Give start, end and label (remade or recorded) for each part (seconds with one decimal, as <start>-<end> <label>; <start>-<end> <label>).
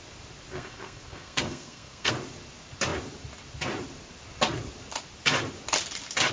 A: 0.0-0.5 recorded; 0.5-2.1 remade; 2.1-6.3 recorded